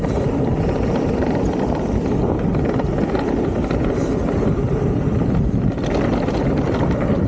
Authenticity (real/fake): real